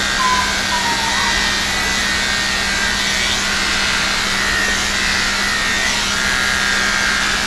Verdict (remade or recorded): recorded